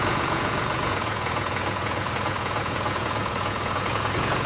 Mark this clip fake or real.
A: fake